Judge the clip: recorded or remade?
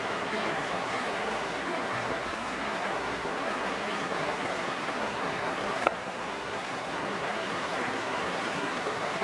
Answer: remade